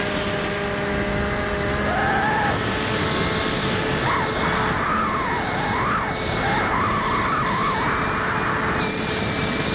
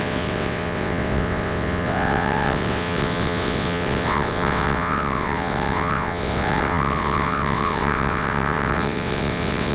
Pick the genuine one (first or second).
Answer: first